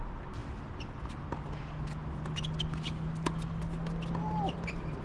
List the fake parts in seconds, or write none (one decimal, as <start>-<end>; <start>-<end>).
none